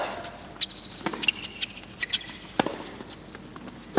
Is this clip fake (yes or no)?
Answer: no